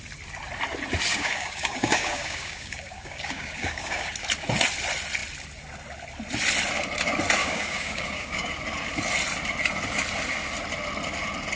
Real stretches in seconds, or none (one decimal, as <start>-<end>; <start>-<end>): 0.0-1.1; 4.1-7.4; 8.5-11.6